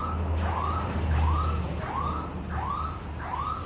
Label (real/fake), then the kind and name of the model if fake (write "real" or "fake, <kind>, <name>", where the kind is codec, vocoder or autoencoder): real